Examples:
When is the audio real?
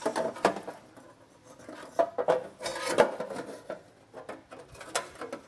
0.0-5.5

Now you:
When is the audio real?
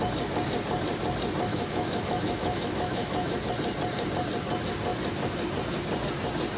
0.0-1.5; 3.5-6.6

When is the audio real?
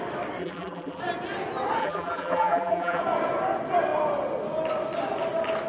0.0-0.4; 1.0-1.8; 3.0-5.7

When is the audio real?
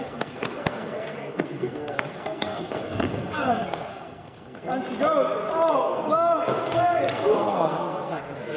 4.7-5.7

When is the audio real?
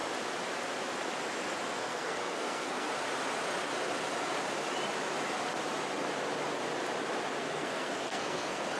0.0-1.7; 2.9-7.4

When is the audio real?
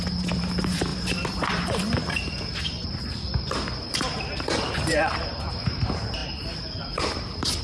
none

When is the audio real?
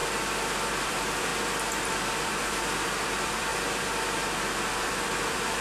0.0-0.7; 1.3-1.9; 3.5-4.6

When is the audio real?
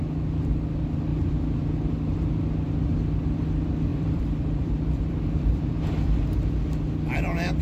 0.0-1.1; 2.4-3.9; 6.5-7.6